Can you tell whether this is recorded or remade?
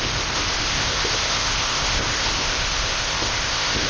remade